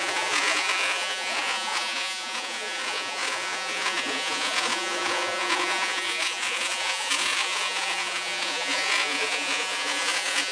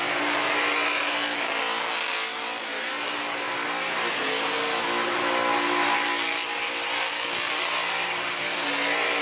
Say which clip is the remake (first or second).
first